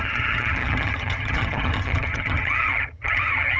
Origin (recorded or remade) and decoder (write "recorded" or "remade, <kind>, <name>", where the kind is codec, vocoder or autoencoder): remade, vocoder, HiFi-GAN